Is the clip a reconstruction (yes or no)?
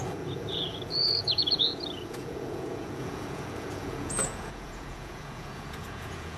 yes